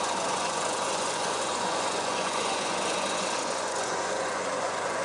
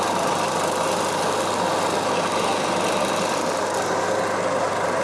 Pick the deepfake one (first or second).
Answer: first